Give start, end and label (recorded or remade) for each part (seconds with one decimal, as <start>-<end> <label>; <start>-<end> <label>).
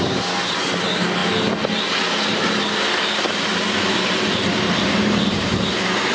0.0-6.1 recorded